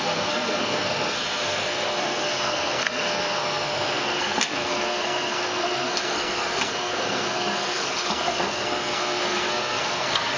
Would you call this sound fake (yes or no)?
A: yes